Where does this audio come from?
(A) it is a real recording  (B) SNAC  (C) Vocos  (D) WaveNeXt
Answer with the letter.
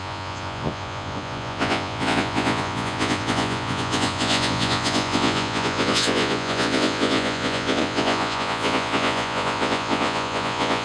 C